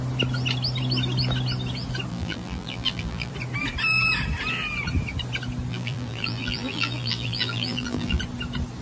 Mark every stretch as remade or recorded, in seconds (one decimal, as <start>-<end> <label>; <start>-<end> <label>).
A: 0.0-2.1 recorded; 2.1-3.3 remade; 3.3-5.7 recorded; 5.7-8.2 remade; 8.2-8.8 recorded